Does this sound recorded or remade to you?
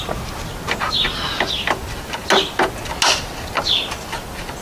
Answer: recorded